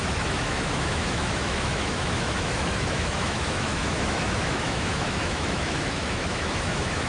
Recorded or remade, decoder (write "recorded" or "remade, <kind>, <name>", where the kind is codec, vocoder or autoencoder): remade, autoencoder, DAC-VAE